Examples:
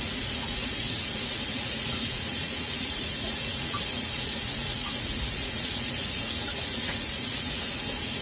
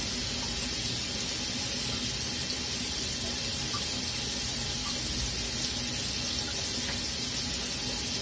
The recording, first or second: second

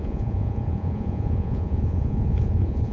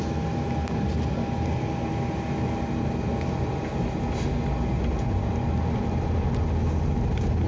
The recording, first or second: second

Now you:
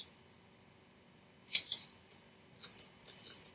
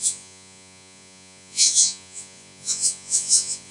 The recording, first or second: first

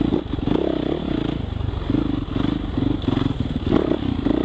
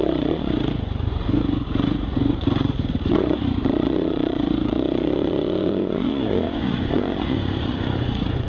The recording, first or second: first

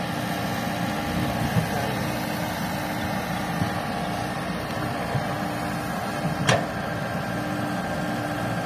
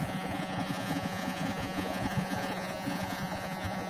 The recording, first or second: first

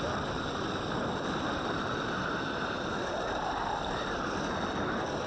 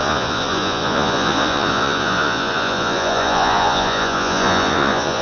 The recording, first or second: first